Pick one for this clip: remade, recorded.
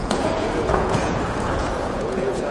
remade